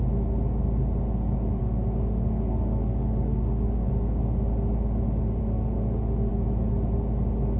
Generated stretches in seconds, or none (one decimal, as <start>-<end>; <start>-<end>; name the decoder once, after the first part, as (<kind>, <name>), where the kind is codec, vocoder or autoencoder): 1.6-3.9 (autoencoder, DAC-VAE); 5.4-6.3